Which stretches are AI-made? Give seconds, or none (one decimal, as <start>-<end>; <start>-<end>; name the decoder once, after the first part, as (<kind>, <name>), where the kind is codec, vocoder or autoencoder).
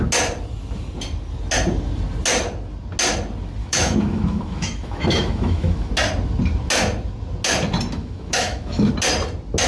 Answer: 3.6-5.9 (autoencoder, DAC-VAE); 8.0-8.9